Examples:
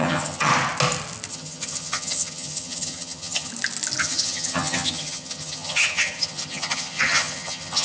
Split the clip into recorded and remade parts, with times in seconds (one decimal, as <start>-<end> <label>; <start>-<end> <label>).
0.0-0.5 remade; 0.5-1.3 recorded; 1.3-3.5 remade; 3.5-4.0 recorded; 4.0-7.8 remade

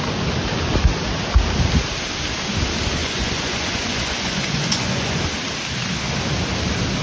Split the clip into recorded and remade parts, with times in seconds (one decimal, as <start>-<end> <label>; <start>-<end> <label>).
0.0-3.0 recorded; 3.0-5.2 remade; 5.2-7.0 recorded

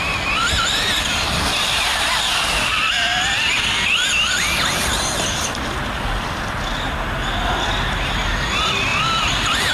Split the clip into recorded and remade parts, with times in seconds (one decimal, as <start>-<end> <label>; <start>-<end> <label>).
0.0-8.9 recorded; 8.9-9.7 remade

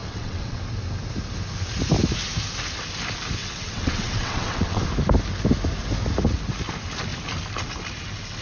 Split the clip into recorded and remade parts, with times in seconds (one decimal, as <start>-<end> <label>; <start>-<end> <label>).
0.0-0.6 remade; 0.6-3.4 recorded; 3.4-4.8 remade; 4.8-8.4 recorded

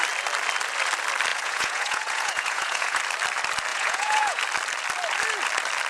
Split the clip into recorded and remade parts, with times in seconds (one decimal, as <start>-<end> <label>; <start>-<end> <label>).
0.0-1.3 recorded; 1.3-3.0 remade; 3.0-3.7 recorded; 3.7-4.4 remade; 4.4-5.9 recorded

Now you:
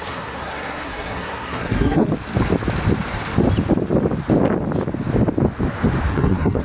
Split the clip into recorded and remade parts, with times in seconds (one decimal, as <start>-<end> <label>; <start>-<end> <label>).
0.0-2.1 remade; 2.1-6.1 recorded; 6.1-6.6 remade

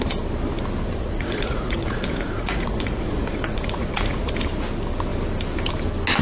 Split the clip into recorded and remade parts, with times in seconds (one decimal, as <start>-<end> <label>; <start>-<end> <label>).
0.0-1.0 recorded; 1.0-4.3 remade; 4.3-6.2 recorded

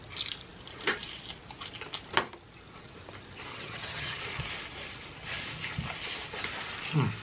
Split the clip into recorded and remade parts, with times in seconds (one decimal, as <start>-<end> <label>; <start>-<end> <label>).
0.0-3.5 recorded; 3.5-4.2 remade; 4.2-7.2 recorded